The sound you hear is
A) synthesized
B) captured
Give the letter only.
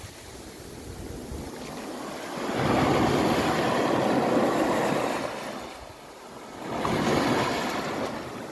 B